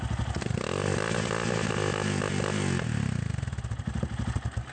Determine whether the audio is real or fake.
real